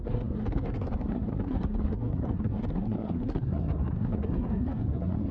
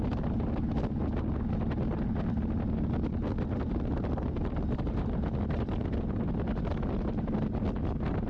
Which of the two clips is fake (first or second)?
first